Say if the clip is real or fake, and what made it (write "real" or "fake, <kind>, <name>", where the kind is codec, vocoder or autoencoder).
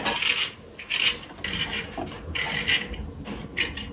real